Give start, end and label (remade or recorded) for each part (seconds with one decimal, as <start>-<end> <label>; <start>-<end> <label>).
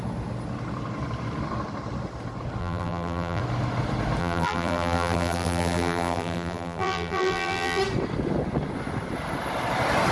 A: 0.0-2.6 recorded; 2.6-3.4 remade; 3.4-4.2 recorded; 4.2-7.8 remade; 7.8-10.1 recorded